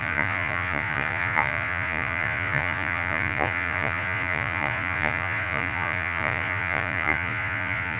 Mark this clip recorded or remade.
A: remade